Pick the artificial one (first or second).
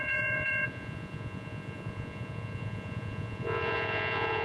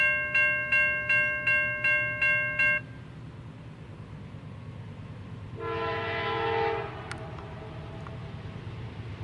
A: first